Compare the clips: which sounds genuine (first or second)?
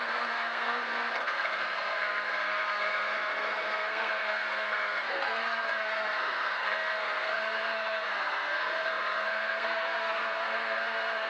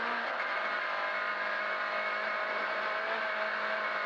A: second